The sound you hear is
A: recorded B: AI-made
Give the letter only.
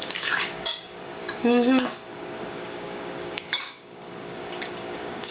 B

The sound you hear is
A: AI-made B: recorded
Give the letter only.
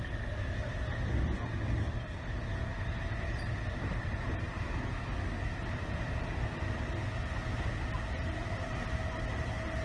B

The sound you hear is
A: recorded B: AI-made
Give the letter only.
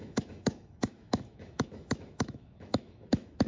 B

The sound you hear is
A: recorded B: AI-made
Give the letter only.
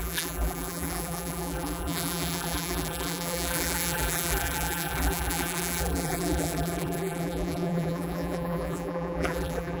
B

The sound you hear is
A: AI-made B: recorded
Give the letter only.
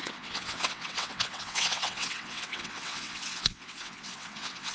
A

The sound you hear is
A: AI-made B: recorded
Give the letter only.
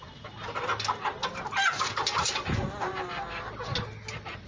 B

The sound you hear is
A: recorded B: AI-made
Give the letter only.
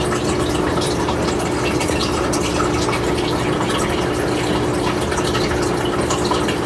A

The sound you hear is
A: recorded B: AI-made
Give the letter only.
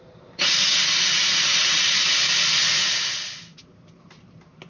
A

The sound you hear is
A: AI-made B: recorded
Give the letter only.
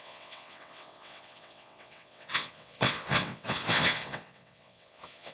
A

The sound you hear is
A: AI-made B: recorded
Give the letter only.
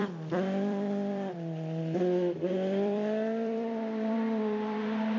A